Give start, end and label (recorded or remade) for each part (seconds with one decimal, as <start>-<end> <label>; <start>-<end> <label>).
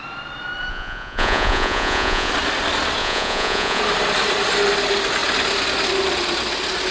0.0-0.7 recorded; 0.7-2.3 remade; 2.3-3.0 recorded; 3.0-3.8 remade; 3.8-6.9 recorded